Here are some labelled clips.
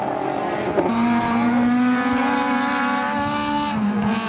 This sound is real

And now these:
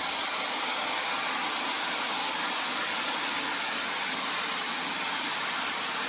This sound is real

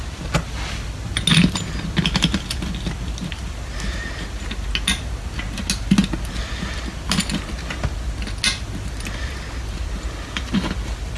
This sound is real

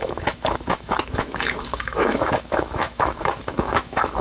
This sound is fake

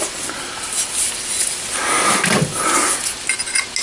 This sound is real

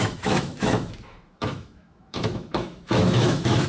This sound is fake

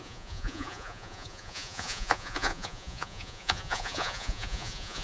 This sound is fake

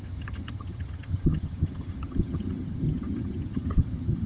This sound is fake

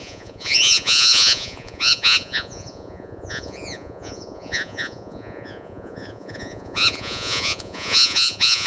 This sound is fake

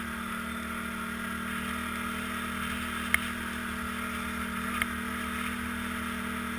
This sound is real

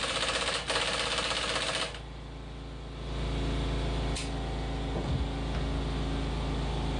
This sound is real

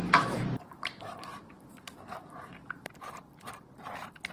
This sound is fake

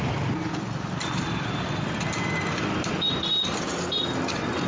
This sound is real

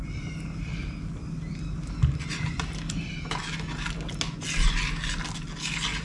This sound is real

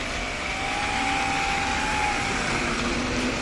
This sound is real